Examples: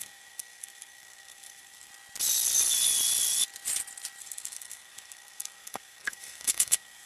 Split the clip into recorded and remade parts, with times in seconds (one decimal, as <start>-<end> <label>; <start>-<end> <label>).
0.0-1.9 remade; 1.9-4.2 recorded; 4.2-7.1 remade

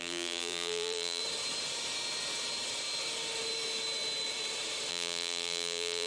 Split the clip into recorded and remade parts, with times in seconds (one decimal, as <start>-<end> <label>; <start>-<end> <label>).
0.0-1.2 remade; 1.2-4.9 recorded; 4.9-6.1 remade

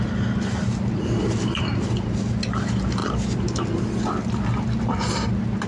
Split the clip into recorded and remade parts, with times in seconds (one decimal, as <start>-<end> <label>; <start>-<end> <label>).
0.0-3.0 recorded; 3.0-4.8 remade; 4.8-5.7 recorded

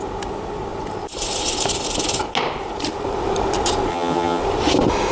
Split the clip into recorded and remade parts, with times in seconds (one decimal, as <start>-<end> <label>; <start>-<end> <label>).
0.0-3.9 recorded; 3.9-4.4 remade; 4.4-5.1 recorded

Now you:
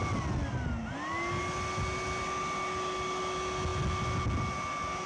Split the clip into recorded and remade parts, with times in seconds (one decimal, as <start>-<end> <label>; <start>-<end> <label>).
0.0-5.1 recorded

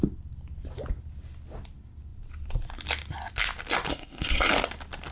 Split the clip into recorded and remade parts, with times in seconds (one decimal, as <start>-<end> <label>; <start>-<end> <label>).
0.0-3.9 recorded; 3.9-4.5 remade; 4.5-5.1 recorded

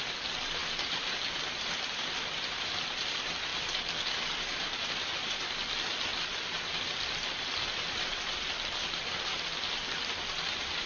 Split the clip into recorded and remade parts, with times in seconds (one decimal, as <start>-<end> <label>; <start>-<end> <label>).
0.0-10.9 recorded

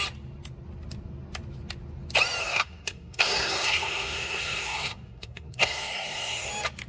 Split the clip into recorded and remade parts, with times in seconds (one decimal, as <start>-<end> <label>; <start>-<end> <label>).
0.0-2.4 recorded; 2.4-6.5 remade; 6.5-6.9 recorded